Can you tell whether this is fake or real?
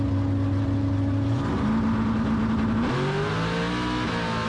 real